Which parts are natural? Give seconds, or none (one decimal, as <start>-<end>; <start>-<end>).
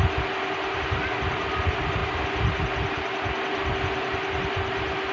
0.0-5.1